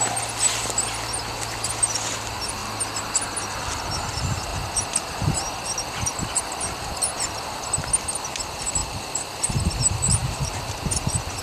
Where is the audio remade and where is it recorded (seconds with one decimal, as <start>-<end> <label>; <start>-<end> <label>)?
0.0-8.8 recorded; 8.8-9.5 remade; 9.5-11.4 recorded